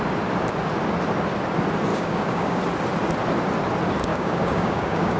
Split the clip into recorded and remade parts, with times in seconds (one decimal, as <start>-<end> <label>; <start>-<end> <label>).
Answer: 0.0-1.9 recorded; 1.9-2.6 remade; 2.6-4.1 recorded; 4.1-5.2 remade